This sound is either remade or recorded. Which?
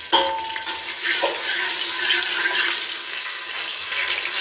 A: recorded